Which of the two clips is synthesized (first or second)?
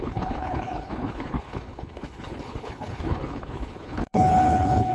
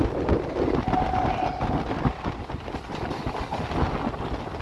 first